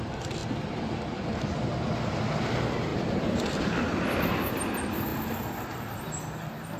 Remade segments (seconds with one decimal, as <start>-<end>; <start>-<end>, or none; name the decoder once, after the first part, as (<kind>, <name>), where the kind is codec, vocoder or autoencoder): none